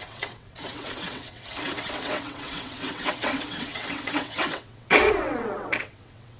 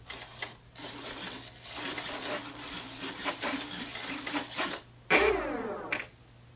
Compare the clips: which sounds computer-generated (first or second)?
first